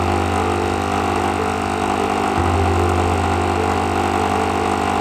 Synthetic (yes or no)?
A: no